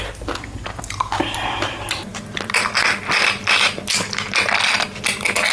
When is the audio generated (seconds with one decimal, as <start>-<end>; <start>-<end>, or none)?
none